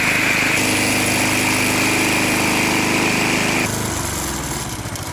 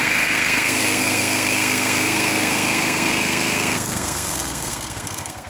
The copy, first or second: second